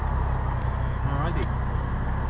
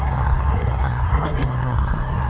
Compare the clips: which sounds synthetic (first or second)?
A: second